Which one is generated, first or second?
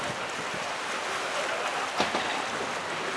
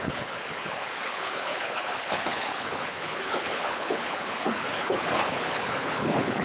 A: second